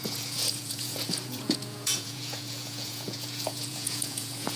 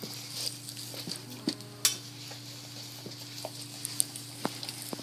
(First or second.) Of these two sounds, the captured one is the second